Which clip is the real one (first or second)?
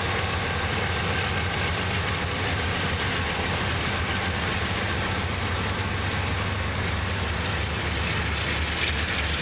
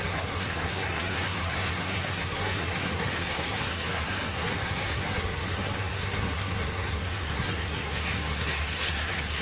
first